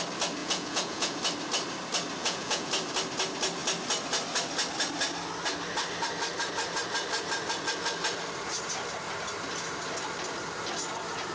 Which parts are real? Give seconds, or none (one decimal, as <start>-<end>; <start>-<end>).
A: 0.0-0.4; 1.2-2.2; 2.7-11.3